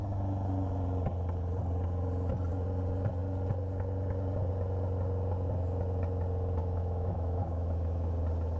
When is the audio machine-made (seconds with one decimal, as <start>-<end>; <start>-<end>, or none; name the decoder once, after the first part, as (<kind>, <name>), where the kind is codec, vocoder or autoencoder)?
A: 6.6-8.1 (autoencoder, DAC-VAE)